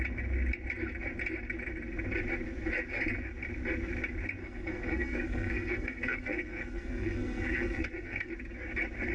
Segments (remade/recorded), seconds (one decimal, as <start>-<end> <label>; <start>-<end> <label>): 0.0-4.4 recorded; 4.4-8.3 remade; 8.3-9.1 recorded